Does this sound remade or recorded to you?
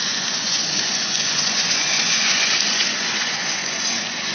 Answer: remade